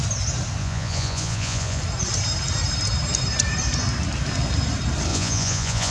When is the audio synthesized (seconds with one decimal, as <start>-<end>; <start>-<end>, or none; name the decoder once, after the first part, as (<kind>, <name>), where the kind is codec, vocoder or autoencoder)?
0.6-1.8 (vocoder, Vocos); 5.1-5.9